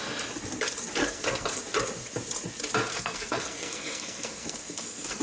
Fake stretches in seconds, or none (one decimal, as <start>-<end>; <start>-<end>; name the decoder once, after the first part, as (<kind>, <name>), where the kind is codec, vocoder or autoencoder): 1.0-1.6 (codec, SNAC); 2.9-5.2